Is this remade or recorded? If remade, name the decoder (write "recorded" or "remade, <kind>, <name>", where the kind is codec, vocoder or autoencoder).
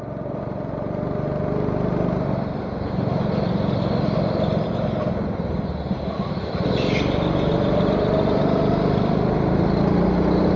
recorded